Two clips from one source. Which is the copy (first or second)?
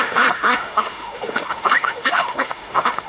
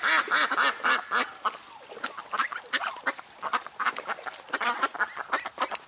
first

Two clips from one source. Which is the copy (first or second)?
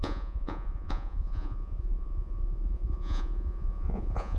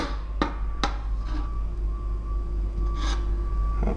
first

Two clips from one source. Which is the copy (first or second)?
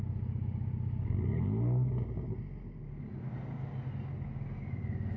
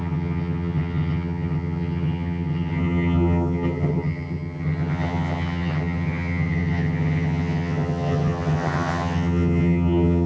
second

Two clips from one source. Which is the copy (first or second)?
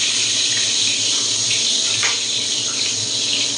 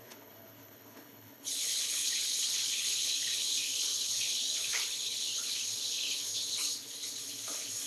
second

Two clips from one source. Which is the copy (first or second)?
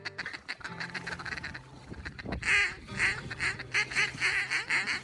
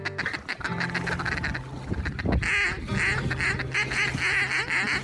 first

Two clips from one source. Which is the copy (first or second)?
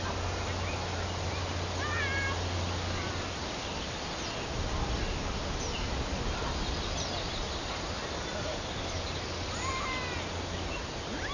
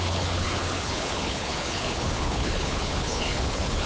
second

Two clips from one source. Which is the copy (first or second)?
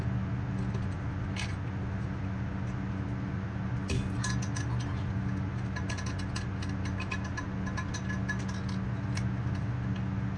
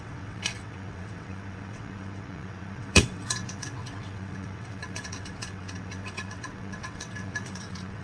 second